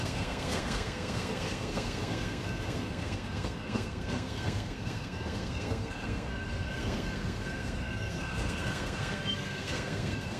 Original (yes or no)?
no